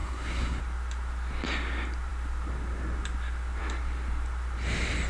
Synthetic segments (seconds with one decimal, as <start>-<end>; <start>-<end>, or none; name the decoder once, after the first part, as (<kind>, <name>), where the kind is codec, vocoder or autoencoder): 0.0-0.6 (codec, SNAC)